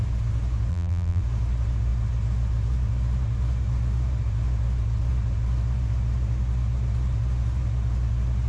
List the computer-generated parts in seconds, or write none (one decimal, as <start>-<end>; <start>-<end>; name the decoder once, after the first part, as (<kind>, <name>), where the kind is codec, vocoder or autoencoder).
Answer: 0.7-1.2 (vocoder, BigVGAN v2)